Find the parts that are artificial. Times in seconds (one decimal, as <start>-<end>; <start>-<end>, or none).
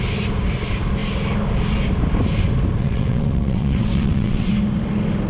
2.8-4.5